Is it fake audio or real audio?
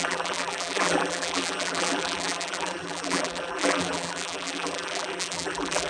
fake